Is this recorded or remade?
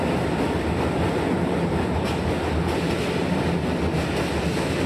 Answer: recorded